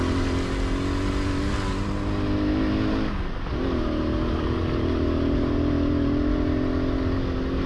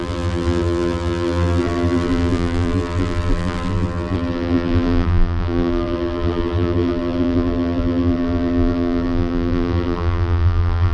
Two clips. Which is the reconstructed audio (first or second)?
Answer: second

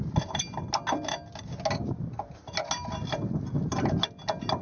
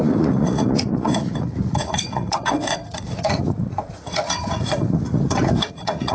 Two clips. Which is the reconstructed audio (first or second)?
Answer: second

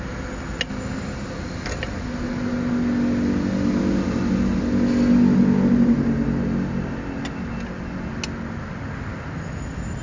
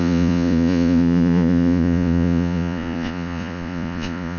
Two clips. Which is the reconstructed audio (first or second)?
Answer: second